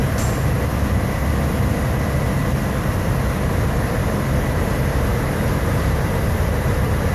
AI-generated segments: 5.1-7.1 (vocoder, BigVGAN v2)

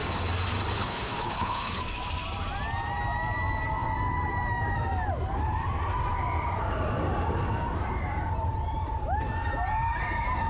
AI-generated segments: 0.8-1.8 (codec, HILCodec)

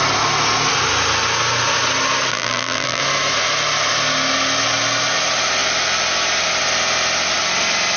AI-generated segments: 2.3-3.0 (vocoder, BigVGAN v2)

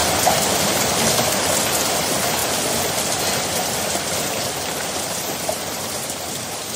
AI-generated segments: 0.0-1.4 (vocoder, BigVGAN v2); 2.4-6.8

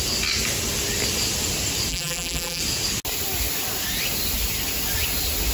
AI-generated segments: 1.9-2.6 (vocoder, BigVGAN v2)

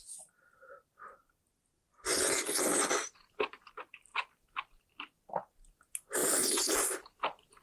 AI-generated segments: 3.0-3.6 (vocoder, BigVGAN v2)